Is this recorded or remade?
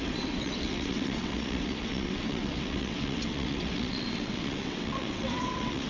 remade